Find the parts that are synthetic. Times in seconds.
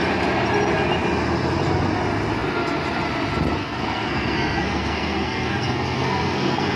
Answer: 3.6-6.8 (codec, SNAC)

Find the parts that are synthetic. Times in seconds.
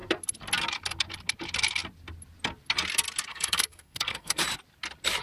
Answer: 3.3-4.4 (codec, SNAC)